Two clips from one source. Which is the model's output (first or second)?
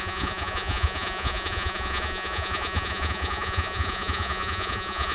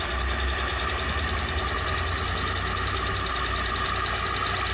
first